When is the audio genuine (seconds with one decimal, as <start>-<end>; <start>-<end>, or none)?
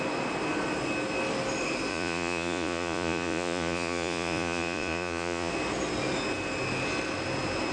0.0-1.9; 5.5-7.7